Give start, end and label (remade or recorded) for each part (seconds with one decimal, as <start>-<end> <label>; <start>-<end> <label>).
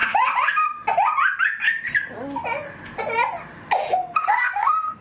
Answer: 0.0-4.0 recorded; 4.0-5.0 remade